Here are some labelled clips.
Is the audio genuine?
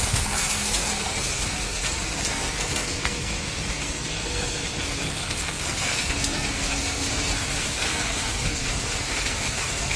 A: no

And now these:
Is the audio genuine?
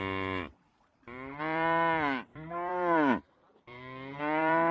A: no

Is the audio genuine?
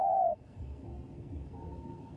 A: no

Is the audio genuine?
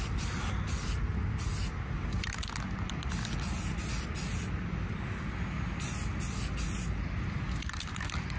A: yes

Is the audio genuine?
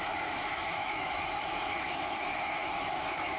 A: no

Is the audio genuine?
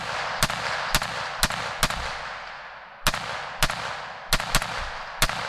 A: yes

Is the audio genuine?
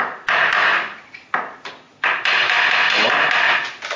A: yes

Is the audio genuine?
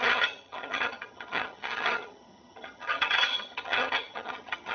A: no